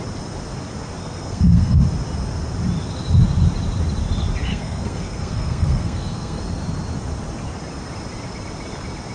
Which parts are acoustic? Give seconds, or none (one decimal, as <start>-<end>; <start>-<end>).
0.0-1.0; 1.8-4.5; 6.4-9.1